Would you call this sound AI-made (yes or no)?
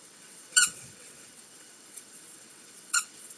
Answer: yes